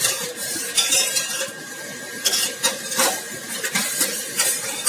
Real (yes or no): no